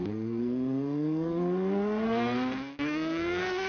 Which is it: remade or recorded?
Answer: remade